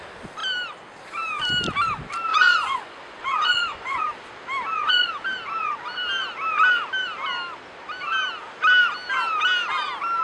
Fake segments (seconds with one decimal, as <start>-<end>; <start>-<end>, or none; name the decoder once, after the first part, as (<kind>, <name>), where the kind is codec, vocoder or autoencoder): 2.3-4.0 (vocoder, Vocos)